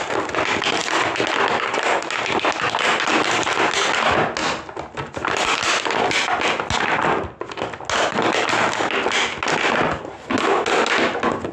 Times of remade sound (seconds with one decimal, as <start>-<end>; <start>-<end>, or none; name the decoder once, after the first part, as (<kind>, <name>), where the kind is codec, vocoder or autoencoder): none